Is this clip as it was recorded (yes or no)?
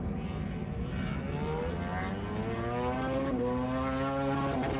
yes